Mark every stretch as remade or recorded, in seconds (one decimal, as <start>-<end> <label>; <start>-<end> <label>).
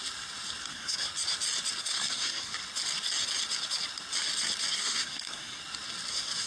0.0-0.7 recorded; 0.7-1.1 remade; 1.1-1.8 recorded; 1.8-2.5 remade; 2.5-4.7 recorded; 4.7-5.6 remade; 5.6-6.1 recorded; 6.1-6.5 remade